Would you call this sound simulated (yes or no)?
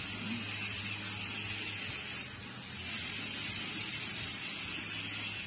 no